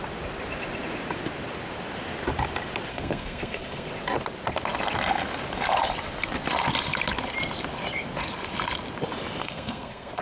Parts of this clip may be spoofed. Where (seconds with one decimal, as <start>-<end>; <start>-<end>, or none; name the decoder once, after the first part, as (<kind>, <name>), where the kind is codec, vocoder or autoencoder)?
2.9-3.9 (codec, SNAC); 9.4-10.2